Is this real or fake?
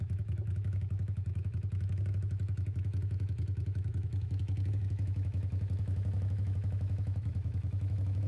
fake